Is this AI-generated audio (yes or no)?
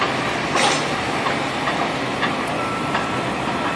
no